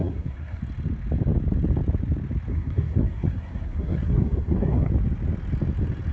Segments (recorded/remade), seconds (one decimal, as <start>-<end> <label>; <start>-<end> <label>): 0.0-0.6 remade; 0.6-2.5 recorded; 2.5-4.9 remade; 4.9-6.1 recorded